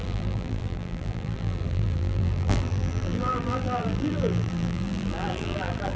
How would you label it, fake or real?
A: fake